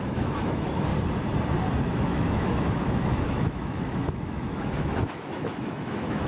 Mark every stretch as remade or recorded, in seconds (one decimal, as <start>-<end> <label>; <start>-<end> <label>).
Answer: 0.0-0.9 remade; 0.9-1.8 recorded; 1.8-6.3 remade